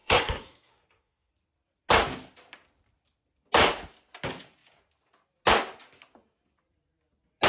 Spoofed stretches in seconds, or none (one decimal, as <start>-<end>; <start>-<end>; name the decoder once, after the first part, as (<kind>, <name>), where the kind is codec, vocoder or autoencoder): 0.0-1.3 (codec, SNAC)